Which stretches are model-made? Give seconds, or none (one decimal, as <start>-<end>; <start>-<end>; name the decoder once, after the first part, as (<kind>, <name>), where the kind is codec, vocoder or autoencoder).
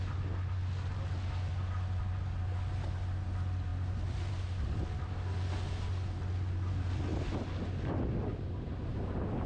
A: none